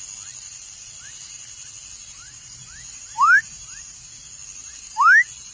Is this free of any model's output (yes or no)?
yes